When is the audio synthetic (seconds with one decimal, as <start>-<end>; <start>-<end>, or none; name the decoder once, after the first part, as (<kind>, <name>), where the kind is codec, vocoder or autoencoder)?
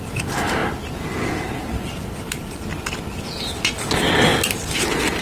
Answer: none